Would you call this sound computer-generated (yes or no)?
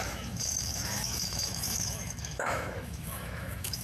yes